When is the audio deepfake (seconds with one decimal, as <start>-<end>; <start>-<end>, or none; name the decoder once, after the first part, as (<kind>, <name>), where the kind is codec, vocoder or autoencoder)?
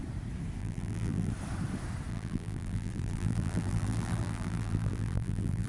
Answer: 0.6-1.3 (vocoder, BigVGAN v2); 2.1-5.7